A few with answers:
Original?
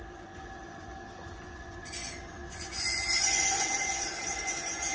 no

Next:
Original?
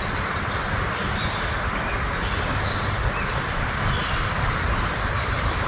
yes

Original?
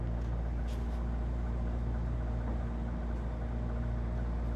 yes